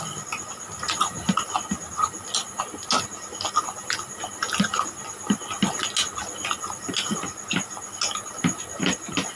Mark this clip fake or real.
real